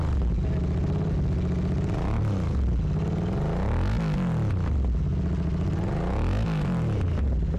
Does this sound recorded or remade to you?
recorded